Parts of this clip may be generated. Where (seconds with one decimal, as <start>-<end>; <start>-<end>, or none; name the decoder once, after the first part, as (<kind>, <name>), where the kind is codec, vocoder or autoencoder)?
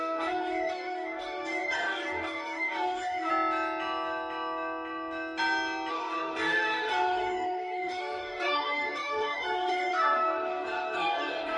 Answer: 0.0-3.3 (codec, DAC); 5.9-11.6